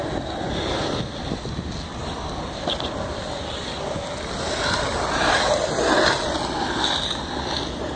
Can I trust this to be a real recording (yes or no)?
yes